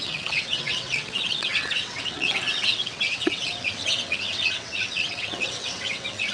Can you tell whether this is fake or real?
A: fake